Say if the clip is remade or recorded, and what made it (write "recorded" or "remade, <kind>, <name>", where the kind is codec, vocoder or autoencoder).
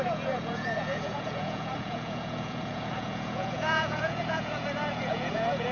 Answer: remade, vocoder, Vocos